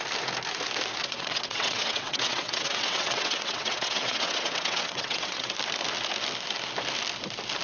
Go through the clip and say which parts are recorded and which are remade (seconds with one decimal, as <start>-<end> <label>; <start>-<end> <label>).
0.0-1.0 recorded; 1.0-5.5 remade; 5.5-7.6 recorded